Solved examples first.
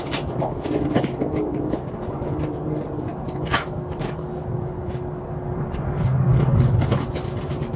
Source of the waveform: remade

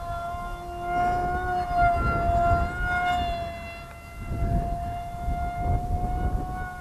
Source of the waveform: recorded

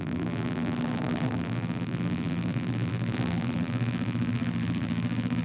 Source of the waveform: remade